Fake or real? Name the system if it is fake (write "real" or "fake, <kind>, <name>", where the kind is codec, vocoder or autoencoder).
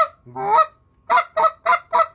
real